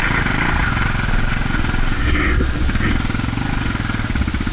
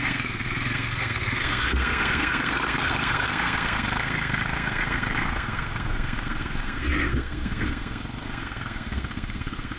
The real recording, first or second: first